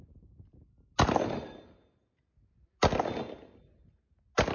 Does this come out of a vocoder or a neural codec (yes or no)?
no